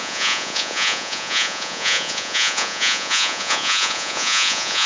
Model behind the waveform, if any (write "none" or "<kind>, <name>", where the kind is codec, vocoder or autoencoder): vocoder, Vocos